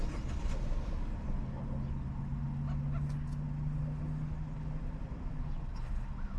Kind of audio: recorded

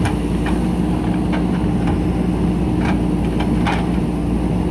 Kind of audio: recorded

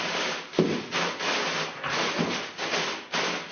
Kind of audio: recorded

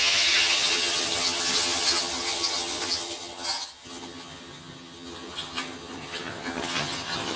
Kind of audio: remade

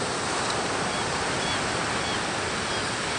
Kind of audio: recorded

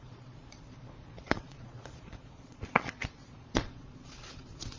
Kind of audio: remade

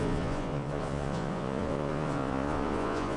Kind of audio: remade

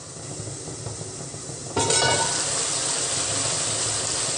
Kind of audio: recorded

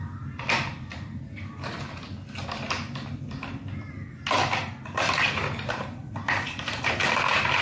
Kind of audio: recorded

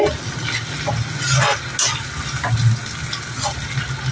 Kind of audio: recorded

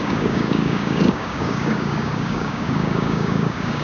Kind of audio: remade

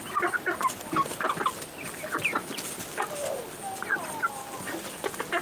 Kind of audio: recorded